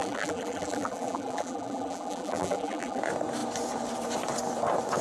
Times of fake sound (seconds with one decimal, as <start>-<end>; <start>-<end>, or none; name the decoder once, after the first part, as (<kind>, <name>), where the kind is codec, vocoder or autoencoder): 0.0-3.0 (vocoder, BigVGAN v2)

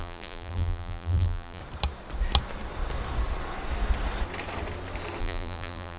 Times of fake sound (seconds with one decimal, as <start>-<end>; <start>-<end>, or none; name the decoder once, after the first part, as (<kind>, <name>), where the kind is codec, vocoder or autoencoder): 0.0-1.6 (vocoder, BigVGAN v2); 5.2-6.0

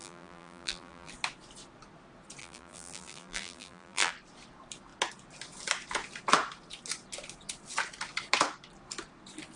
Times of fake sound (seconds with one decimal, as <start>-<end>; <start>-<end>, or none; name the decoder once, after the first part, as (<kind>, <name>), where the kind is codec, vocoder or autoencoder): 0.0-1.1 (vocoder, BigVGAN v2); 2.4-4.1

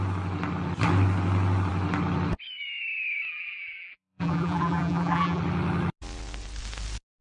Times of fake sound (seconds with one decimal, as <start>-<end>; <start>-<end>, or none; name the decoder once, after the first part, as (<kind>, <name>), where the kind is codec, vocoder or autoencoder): 3.3-5.4 (vocoder, BigVGAN v2)

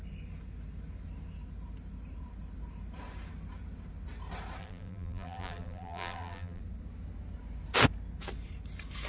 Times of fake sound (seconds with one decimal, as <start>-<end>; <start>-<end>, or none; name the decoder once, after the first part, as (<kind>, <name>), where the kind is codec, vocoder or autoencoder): 4.6-6.6 (vocoder, BigVGAN v2)

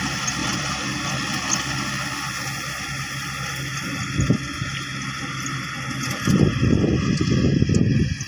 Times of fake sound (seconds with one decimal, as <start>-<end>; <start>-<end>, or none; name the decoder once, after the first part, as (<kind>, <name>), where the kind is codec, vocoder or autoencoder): 0.4-1.1 (vocoder, BigVGAN v2)